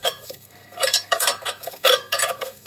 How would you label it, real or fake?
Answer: fake